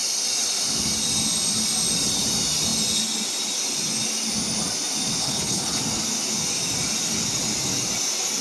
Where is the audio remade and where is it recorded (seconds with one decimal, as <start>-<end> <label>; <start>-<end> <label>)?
0.0-5.2 recorded; 5.2-5.8 remade; 5.8-8.4 recorded